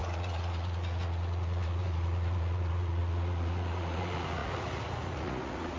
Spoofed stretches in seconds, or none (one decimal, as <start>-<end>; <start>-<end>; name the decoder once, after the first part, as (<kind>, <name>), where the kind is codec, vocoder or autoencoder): 0.0-5.8 (vocoder, Vocos)